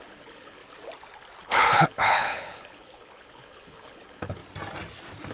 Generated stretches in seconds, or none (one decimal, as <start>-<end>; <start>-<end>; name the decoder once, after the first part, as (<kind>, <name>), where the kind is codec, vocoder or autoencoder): 0.0-0.6 (codec, HILCodec); 1.4-4.4